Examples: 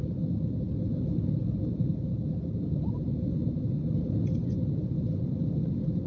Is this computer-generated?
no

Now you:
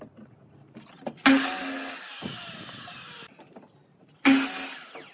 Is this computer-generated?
no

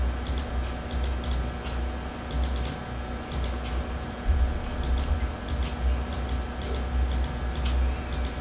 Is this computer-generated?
no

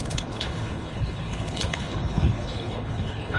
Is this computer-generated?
yes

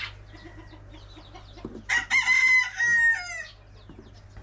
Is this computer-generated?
no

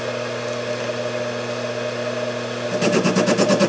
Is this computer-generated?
no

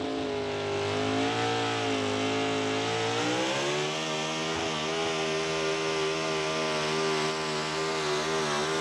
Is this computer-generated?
no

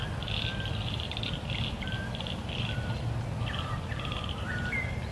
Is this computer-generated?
no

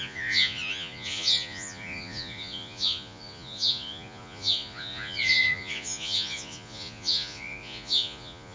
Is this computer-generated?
yes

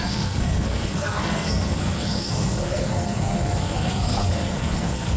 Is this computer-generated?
yes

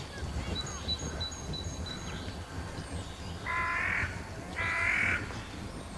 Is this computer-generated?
no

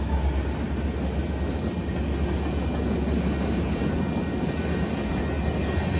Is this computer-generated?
no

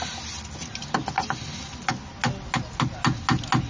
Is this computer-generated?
no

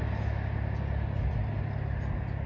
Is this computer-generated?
no